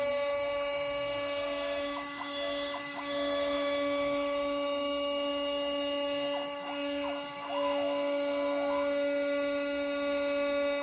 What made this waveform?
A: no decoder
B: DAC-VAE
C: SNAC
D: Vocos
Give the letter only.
B